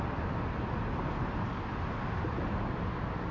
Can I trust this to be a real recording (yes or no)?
yes